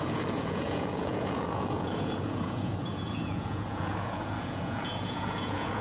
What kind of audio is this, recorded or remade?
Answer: remade